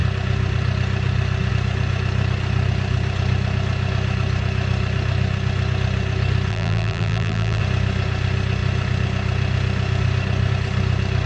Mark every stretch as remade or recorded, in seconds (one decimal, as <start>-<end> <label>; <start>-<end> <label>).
0.0-6.5 recorded; 6.5-7.6 remade; 7.6-11.3 recorded